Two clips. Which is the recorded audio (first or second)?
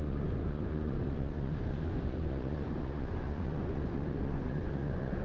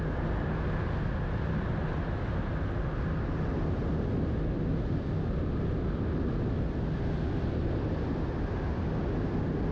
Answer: second